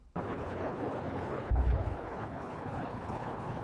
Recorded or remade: remade